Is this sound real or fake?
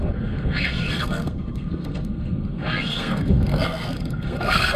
fake